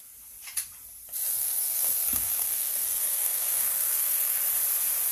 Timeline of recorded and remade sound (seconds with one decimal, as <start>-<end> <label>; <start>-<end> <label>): 0.0-1.3 recorded; 1.3-4.4 remade; 4.4-5.1 recorded